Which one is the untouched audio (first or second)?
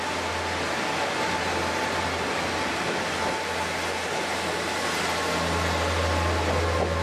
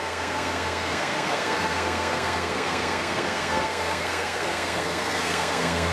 first